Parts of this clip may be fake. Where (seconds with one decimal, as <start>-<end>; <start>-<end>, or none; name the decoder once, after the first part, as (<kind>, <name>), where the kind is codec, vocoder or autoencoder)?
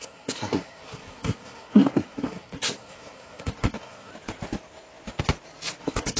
0.0-4.1 (codec, SNAC); 5.8-6.2